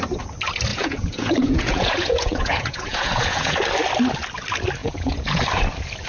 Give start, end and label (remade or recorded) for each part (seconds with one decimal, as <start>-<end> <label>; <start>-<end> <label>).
0.0-0.7 recorded; 0.7-3.6 remade; 3.6-4.8 recorded; 4.8-5.4 remade; 5.4-6.1 recorded